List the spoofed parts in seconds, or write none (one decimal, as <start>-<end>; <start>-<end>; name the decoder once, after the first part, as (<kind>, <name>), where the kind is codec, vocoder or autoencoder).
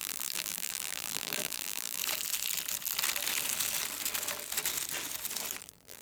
0.0-2.0 (vocoder, BigVGAN v2); 5.6-6.0